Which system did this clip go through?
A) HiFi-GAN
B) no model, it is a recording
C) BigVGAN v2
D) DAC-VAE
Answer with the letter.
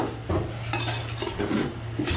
B